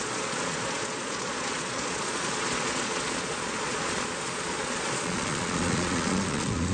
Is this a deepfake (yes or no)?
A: yes